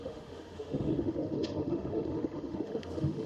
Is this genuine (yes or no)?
no